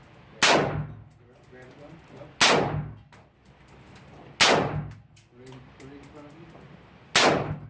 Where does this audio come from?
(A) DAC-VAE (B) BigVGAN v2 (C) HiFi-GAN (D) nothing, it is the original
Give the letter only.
D